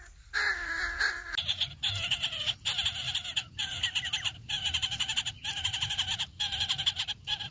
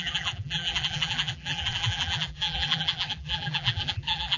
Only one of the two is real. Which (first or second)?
first